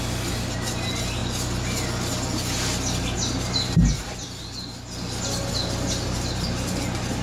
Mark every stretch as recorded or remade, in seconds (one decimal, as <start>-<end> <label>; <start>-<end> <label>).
0.0-7.2 recorded